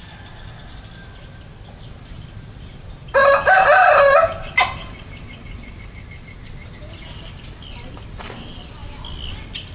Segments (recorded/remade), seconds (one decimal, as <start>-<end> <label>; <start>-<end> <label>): 0.0-9.7 recorded